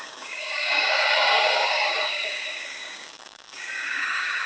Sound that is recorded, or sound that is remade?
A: remade